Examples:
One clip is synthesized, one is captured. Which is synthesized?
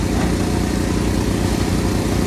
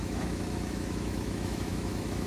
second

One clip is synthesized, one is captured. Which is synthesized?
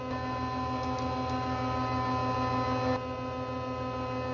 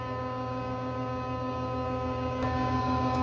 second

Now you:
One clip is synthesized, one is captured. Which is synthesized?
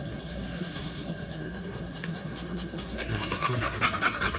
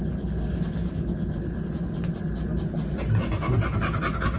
first